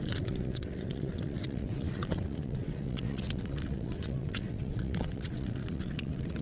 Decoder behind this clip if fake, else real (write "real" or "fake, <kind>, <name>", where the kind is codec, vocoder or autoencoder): fake, vocoder, WaveNeXt